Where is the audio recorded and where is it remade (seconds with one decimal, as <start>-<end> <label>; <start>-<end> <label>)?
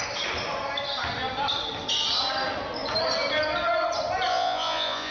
0.0-4.3 recorded; 4.3-5.1 remade